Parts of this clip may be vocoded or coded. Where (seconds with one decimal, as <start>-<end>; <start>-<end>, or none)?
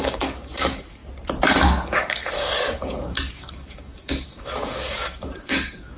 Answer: 0.0-1.0; 1.5-6.0